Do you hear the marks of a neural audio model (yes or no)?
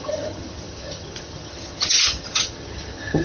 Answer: yes